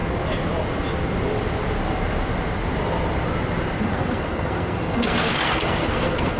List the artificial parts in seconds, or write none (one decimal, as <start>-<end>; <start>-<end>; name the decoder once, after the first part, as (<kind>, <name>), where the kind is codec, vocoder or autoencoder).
3.8-6.4 (codec, SNAC)